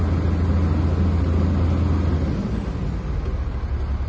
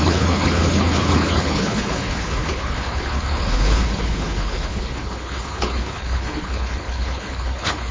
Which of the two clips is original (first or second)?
first